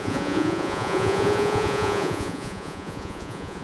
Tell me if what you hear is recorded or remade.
remade